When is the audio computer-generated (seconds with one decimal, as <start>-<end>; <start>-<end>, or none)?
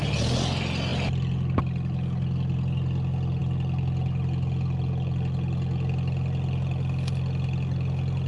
none